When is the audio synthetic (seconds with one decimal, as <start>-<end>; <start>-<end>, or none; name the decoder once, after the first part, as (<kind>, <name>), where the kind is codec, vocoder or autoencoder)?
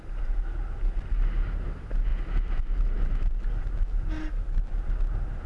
none